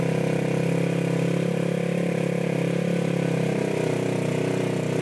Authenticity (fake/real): real